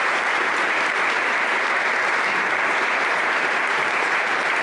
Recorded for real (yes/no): no